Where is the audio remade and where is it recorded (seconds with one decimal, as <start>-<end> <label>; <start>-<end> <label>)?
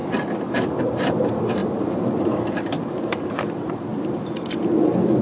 0.0-0.8 recorded; 0.8-3.9 remade; 3.9-5.2 recorded